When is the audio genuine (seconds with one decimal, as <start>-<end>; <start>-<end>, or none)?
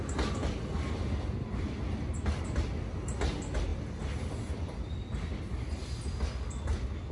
0.0-7.1